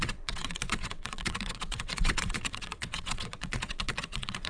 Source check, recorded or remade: remade